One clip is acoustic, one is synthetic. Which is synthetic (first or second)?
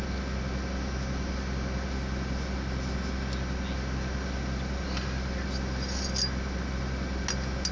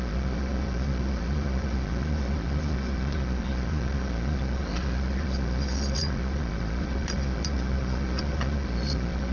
second